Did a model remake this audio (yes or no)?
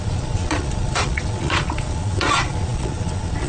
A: yes